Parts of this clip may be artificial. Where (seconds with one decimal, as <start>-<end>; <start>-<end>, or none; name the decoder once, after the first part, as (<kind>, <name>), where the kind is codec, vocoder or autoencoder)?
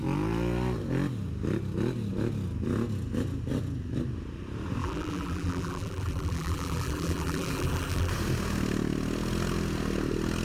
4.8-8.1 (vocoder, BigVGAN v2)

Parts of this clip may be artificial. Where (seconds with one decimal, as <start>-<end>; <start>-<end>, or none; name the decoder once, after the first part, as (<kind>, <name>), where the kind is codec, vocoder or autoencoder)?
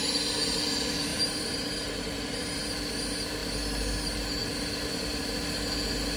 1.1-2.6 (vocoder, BigVGAN v2)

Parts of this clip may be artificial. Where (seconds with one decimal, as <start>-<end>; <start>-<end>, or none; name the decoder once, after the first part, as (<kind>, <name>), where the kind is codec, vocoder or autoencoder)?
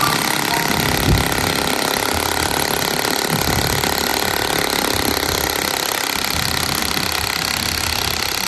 none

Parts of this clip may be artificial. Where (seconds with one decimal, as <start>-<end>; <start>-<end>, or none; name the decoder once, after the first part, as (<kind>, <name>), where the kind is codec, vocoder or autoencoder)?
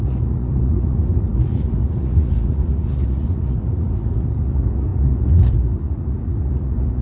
0.0-7.0 (vocoder, Vocos)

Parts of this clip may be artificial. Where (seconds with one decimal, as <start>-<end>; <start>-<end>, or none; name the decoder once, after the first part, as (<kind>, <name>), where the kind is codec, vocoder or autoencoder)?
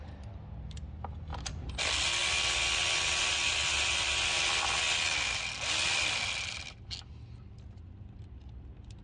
none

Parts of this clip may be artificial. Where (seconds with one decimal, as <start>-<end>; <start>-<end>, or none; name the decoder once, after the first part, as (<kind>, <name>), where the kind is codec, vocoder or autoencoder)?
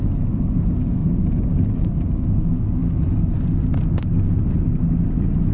none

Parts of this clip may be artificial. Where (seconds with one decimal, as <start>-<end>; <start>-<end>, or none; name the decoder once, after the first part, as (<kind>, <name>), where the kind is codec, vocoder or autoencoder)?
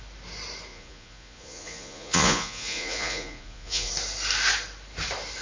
0.7-3.9 (vocoder, Vocos)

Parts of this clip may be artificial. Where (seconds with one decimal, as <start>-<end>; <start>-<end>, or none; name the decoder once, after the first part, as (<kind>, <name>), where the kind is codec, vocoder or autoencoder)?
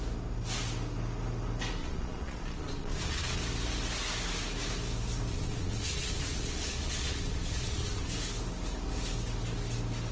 1.8-3.4 (vocoder, Vocos); 5.3-8.1